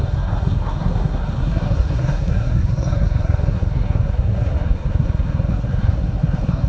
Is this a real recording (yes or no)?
no